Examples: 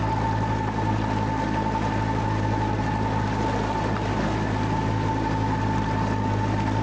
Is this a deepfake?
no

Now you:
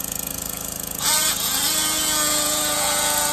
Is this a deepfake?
yes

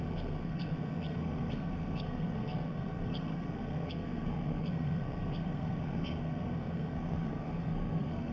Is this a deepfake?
yes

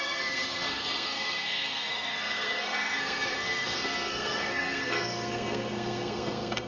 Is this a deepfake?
yes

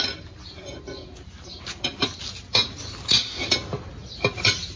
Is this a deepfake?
no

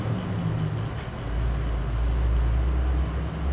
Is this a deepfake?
no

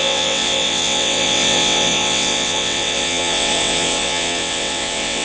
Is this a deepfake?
yes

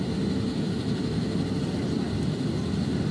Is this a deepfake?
no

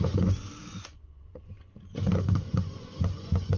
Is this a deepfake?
yes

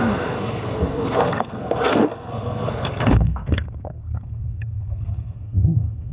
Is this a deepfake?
yes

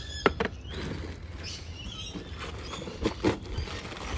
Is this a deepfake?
no